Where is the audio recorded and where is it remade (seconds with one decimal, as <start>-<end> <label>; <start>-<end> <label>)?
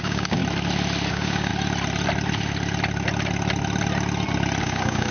0.0-0.4 remade; 0.4-1.1 recorded; 1.1-1.5 remade; 1.5-4.6 recorded; 4.6-5.1 remade